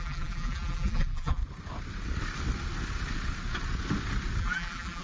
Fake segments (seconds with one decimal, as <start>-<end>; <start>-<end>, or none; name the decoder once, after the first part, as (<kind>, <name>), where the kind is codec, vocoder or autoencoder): 0.0-1.4 (vocoder, BigVGAN v2); 4.4-5.0